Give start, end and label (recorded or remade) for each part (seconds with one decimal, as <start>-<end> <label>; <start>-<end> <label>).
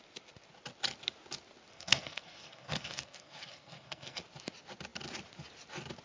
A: 0.0-1.7 recorded; 1.7-4.2 remade; 4.2-6.0 recorded